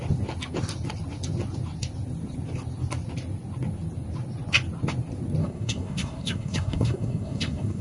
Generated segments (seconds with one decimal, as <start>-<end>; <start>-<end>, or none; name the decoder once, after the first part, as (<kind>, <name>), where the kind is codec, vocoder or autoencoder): 5.4-7.8 (codec, SNAC)